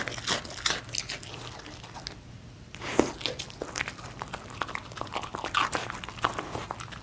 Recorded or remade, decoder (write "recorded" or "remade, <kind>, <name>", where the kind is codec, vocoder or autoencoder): recorded